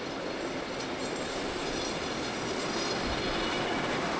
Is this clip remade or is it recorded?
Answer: recorded